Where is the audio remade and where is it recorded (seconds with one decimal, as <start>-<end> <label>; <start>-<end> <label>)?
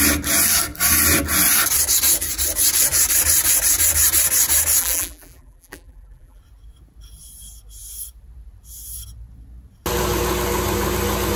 0.0-4.8 recorded; 4.8-6.4 remade; 6.4-11.4 recorded